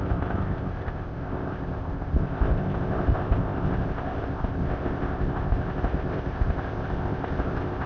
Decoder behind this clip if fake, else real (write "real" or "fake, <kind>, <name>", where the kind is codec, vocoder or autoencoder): fake, codec, ZipCodec